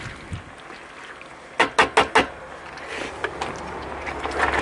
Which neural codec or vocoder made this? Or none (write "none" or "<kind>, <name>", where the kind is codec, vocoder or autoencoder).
none